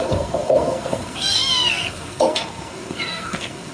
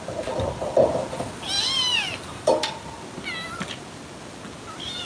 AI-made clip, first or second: first